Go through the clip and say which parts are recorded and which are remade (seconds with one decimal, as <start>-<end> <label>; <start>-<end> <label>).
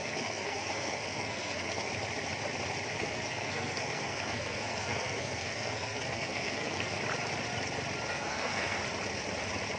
0.0-1.9 remade; 1.9-2.9 recorded; 2.9-7.0 remade; 7.0-8.1 recorded; 8.1-8.8 remade; 8.8-9.8 recorded